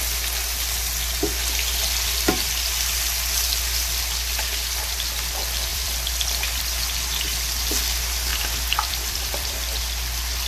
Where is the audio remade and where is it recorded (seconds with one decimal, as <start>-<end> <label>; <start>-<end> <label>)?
0.0-5.7 recorded; 5.7-6.6 remade; 6.6-8.3 recorded; 8.3-9.8 remade; 9.8-10.5 recorded